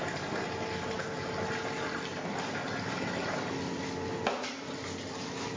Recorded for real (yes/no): yes